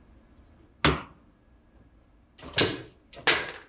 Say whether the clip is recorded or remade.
recorded